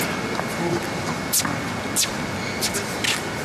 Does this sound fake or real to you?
real